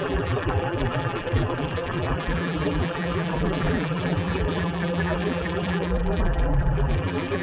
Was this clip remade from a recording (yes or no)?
yes